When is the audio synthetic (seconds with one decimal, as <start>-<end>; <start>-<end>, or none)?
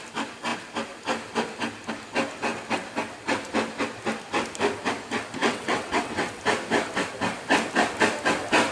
5.4-6.4